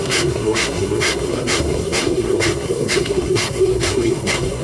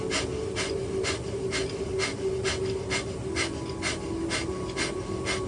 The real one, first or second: second